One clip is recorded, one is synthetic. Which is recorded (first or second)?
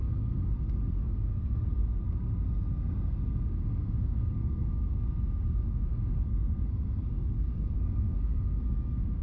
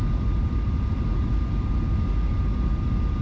second